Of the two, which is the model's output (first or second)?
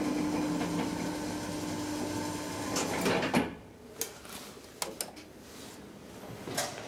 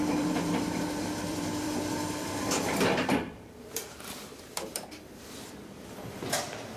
second